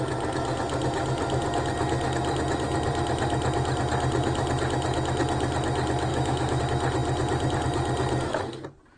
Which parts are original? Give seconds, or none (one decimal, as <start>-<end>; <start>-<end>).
0.0-6.1; 6.6-9.0